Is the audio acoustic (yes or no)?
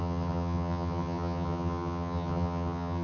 no